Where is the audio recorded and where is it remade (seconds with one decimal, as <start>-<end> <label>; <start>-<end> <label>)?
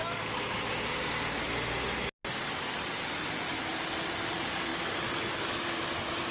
0.0-6.3 recorded